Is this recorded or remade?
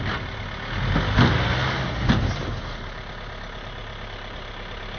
recorded